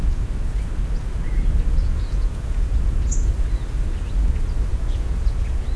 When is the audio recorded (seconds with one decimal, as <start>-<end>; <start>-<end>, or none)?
0.0-1.8; 3.3-4.7